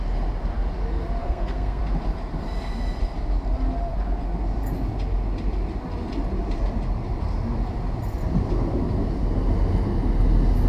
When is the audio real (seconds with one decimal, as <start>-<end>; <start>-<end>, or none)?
0.0-1.2; 1.8-10.7